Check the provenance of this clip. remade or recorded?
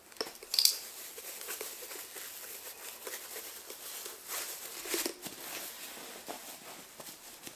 recorded